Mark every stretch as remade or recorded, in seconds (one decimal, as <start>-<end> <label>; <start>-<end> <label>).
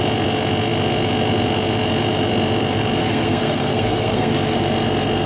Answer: 0.0-3.0 recorded; 3.0-4.3 remade; 4.3-5.3 recorded